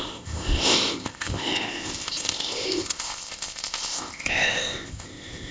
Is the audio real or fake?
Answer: fake